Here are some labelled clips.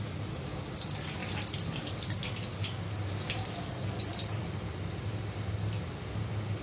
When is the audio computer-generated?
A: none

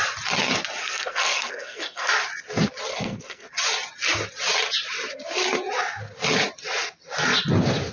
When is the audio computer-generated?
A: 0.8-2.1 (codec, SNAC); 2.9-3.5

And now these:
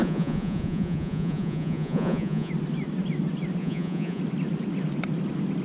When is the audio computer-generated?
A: 0.0-2.5 (vocoder, Vocos); 3.6-4.2

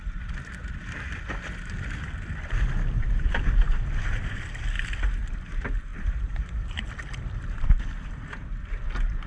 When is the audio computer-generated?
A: 3.0-4.6 (vocoder, BigVGAN v2); 5.9-6.9